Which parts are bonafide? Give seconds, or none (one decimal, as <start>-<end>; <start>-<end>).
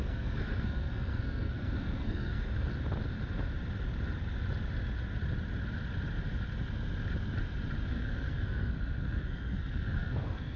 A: 2.7-7.9